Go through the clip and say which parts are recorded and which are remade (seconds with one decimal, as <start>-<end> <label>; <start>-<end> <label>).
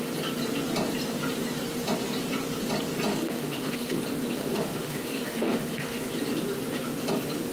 0.0-3.1 recorded; 3.1-4.0 remade; 4.0-4.4 recorded; 4.4-6.1 remade; 6.1-7.5 recorded